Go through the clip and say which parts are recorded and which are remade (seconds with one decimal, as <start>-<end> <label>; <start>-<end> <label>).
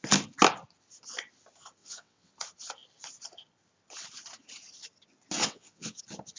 0.0-1.8 recorded; 1.8-2.3 remade; 2.3-5.4 recorded; 5.4-6.0 remade; 6.0-6.4 recorded